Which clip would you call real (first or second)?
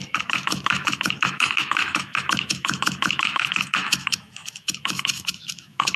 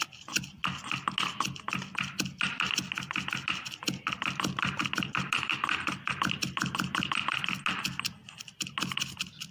second